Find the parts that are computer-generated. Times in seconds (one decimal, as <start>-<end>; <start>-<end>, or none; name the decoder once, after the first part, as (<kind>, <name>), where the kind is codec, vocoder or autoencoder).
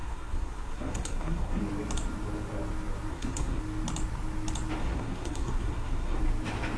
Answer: 0.0-1.6 (codec, SNAC); 3.1-3.6; 4.8-6.2